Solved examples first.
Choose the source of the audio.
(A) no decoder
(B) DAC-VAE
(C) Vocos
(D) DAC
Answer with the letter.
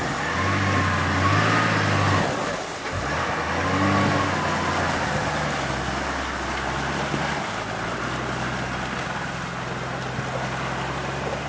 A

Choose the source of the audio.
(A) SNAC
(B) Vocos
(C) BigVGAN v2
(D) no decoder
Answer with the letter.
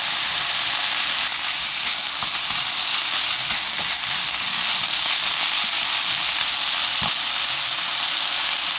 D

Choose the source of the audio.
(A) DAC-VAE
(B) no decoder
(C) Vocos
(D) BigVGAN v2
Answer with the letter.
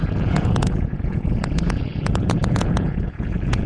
C